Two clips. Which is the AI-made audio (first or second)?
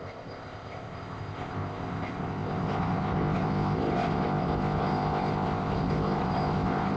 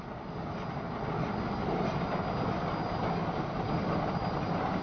first